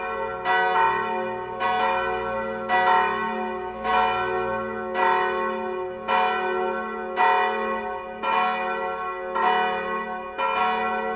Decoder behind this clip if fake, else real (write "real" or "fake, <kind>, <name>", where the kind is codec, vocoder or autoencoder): real